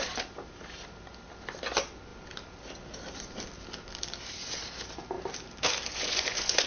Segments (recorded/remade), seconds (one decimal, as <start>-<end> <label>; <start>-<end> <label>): 0.0-5.9 recorded; 5.9-6.7 remade